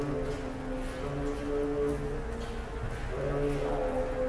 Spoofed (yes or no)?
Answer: no